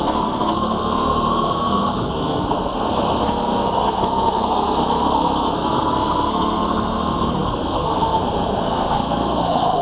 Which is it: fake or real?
fake